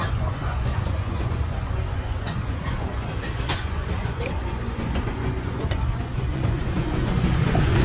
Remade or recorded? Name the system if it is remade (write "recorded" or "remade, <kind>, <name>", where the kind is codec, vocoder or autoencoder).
remade, vocoder, Vocos